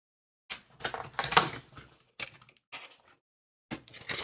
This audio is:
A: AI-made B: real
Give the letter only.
B